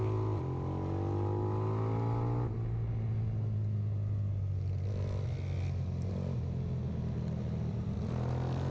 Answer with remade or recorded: recorded